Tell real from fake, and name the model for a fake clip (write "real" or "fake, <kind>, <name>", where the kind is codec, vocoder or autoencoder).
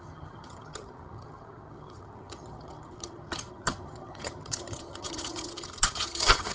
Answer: fake, vocoder, HiFi-GAN